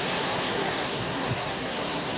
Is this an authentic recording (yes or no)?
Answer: no